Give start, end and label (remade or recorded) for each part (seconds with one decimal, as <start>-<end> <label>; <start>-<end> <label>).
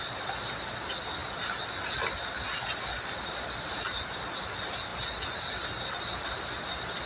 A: 0.0-7.1 recorded